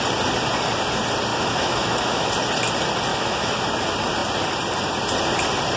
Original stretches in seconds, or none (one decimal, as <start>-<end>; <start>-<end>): 0.0-1.3; 2.3-3.1; 3.6-5.8